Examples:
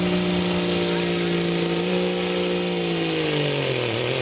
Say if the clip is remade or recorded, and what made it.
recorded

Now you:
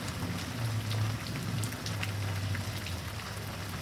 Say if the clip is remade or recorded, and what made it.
recorded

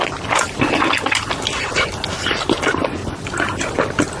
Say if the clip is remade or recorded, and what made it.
recorded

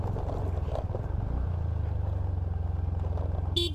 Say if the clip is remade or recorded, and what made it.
recorded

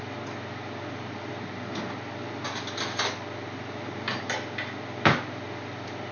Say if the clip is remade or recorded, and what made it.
recorded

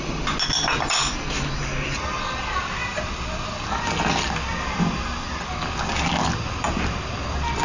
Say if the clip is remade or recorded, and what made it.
recorded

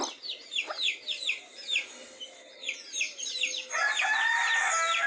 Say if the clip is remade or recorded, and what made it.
recorded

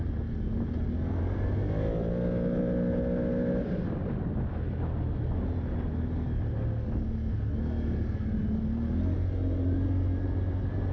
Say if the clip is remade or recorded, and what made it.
recorded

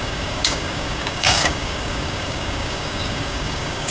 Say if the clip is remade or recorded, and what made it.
remade, codec, DAC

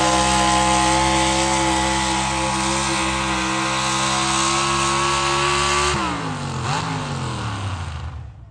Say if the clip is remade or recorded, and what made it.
recorded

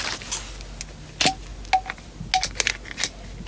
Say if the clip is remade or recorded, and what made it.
recorded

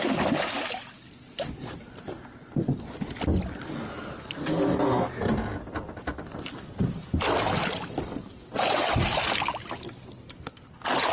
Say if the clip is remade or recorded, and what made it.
recorded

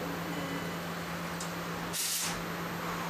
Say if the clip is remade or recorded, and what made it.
recorded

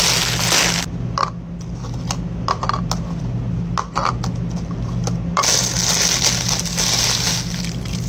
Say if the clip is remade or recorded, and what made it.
recorded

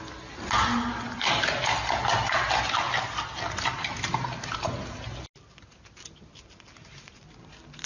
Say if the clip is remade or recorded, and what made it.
recorded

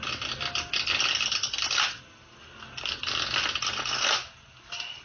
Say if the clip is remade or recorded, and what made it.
recorded